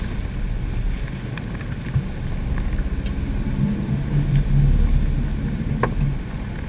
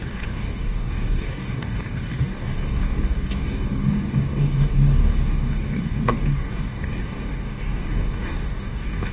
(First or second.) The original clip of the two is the first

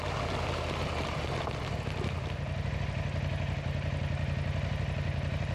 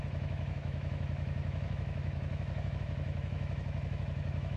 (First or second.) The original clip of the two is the first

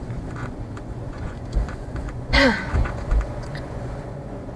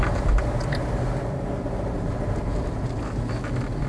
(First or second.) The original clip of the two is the second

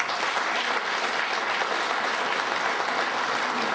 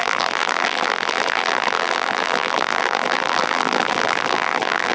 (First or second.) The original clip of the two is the first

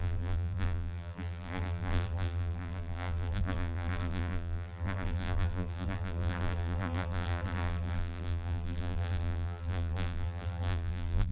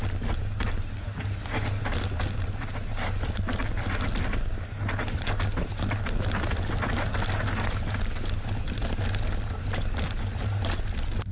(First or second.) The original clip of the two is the second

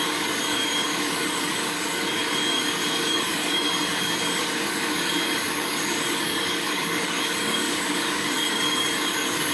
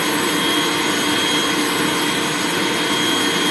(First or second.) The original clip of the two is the second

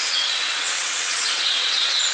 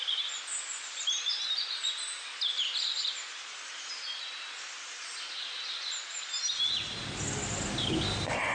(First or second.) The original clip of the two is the second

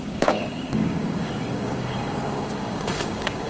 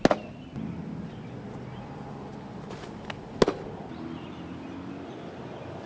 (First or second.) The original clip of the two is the second